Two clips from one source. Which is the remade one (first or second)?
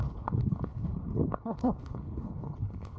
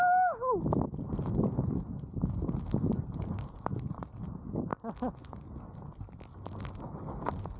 first